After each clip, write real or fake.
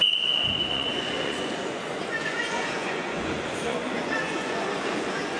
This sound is fake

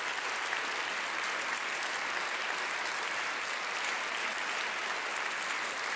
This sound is real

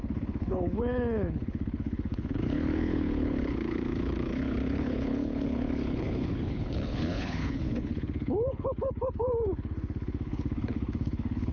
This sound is fake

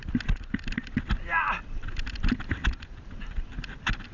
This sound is real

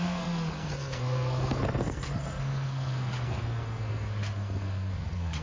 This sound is fake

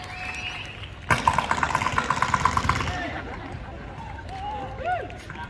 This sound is real